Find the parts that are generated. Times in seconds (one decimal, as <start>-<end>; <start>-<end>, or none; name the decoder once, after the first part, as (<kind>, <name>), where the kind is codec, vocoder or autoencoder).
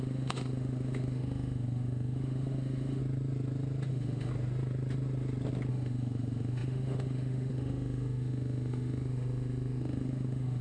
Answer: 0.0-3.0 (autoencoder, DAC-VAE); 3.9-4.3; 5.7-10.6